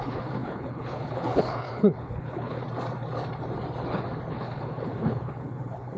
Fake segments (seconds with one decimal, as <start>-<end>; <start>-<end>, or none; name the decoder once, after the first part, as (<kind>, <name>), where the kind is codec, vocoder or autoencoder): 0.0-2.6 (codec, HILCodec); 4.3-6.0